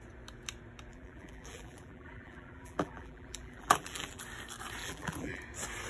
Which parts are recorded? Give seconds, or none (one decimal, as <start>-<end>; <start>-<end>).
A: 0.0-0.9; 4.2-4.8; 5.4-5.9